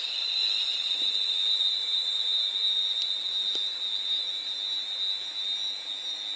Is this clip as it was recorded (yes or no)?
yes